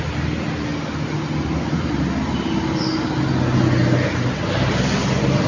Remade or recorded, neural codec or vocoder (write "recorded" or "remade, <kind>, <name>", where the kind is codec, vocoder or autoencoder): recorded